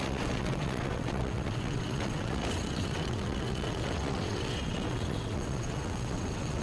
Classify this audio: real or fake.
fake